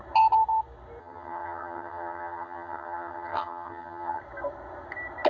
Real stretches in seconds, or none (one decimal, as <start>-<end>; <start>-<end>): 0.0-1.0; 4.2-5.3

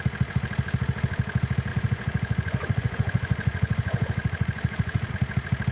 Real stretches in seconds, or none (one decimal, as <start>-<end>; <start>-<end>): 0.0-1.7; 5.1-5.7

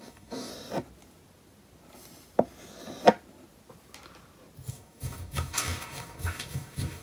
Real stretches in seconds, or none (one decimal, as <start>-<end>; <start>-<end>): 0.5-4.7

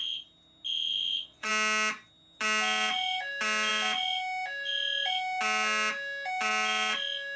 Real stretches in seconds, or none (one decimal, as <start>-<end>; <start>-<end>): 0.0-0.9; 1.5-7.4

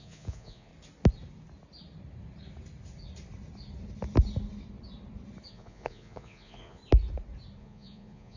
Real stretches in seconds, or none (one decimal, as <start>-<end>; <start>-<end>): 0.7-5.5; 6.8-7.6

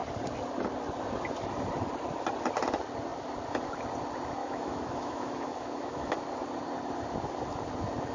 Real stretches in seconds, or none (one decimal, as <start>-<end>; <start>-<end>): 0.0-4.4; 6.1-8.1